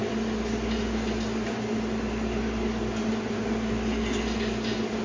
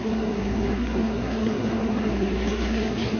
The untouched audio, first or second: first